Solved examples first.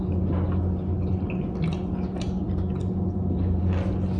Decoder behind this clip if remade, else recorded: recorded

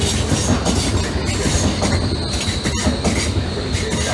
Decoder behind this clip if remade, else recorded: recorded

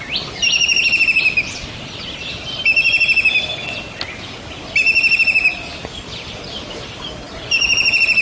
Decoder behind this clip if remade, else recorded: recorded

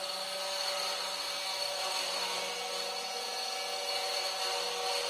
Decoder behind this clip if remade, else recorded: recorded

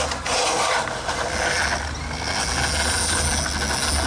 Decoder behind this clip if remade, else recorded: recorded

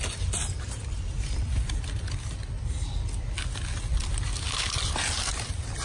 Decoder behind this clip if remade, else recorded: recorded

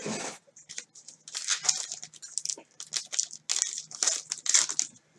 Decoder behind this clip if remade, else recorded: recorded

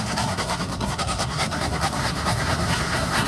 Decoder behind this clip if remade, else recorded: remade, codec, SNAC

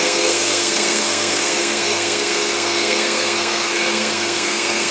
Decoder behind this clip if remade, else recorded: remade, codec, SNAC